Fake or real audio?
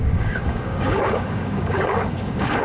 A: fake